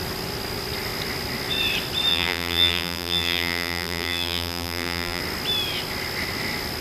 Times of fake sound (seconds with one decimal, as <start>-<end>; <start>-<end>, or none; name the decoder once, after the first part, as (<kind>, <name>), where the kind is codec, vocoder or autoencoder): 2.1-5.2 (vocoder, BigVGAN v2)